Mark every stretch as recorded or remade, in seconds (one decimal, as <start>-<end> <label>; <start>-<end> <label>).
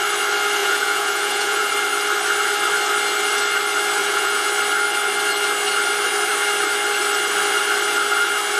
0.0-0.6 recorded; 0.6-1.7 remade; 1.7-4.0 recorded; 4.0-4.5 remade; 4.5-8.6 recorded